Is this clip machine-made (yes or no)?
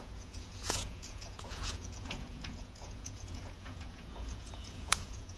yes